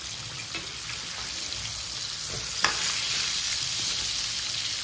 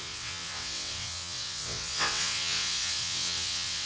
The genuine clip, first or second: first